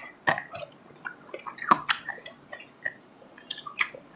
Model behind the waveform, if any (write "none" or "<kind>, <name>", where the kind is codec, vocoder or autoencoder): vocoder, BigVGAN v2